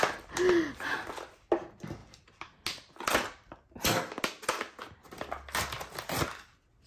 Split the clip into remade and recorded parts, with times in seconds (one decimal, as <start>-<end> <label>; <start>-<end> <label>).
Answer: 0.0-6.9 recorded